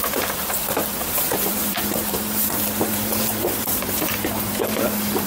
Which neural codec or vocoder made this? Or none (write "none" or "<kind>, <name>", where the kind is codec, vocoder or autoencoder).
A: vocoder, BigVGAN v2